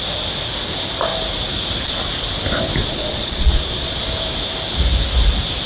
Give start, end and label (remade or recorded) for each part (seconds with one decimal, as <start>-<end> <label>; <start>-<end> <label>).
0.0-2.8 recorded; 2.8-4.0 remade; 4.0-5.7 recorded